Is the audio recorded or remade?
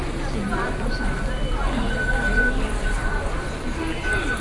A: recorded